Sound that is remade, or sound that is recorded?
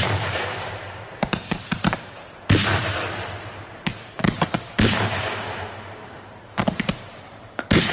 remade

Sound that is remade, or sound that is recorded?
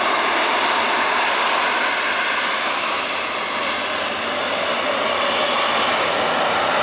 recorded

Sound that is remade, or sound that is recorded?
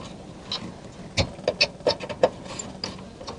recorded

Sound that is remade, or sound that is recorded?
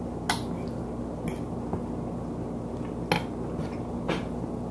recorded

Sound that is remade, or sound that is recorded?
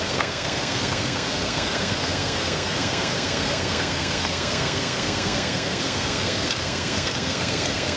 remade